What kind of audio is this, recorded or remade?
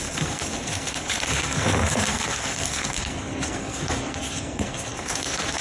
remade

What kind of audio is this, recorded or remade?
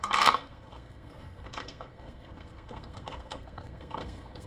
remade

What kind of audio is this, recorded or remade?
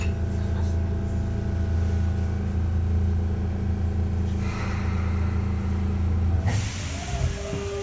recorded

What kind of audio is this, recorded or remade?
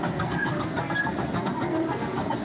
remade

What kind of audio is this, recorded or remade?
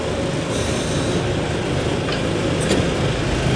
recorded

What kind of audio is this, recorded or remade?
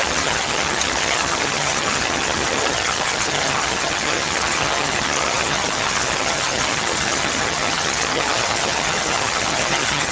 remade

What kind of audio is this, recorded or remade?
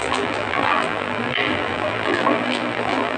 remade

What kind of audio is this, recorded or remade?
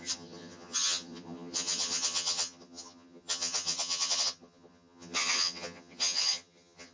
remade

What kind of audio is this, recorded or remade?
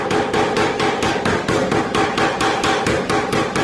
recorded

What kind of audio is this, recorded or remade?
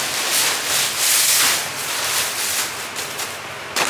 remade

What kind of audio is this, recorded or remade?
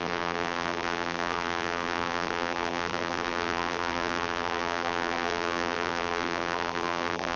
remade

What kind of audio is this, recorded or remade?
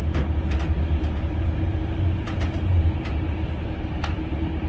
remade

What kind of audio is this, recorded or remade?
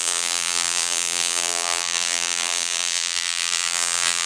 remade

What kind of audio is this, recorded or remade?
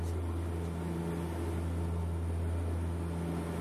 recorded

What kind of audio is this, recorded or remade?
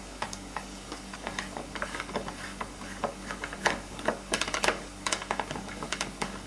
remade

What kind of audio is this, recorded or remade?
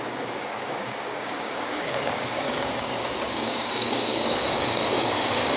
remade